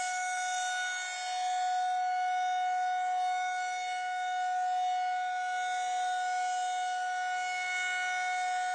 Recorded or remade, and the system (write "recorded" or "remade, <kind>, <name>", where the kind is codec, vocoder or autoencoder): recorded